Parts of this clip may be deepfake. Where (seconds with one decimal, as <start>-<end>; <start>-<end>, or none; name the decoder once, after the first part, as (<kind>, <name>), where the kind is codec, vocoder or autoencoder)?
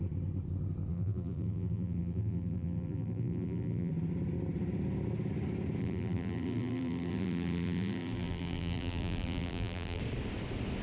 0.9-3.9 (vocoder, BigVGAN v2); 5.8-10.0